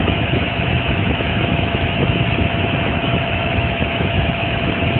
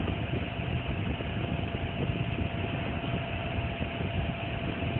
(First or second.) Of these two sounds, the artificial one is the first